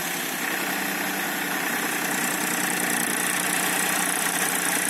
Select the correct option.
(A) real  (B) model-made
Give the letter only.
A